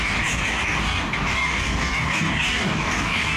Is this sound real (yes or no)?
no